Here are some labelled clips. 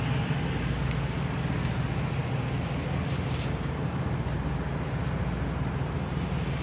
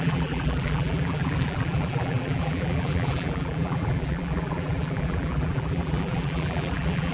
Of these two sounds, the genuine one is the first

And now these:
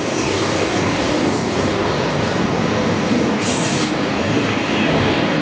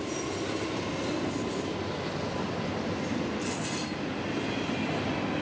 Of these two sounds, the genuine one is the second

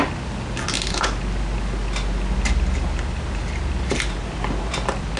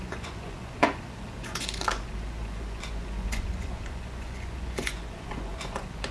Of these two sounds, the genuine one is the first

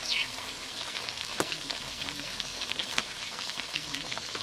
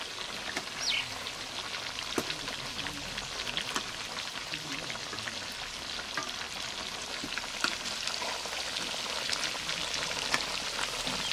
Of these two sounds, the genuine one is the second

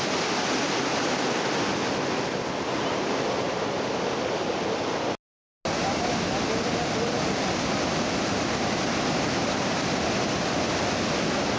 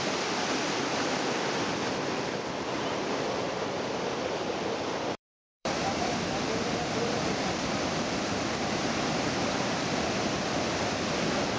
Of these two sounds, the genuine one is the first